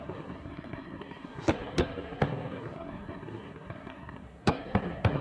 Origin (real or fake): fake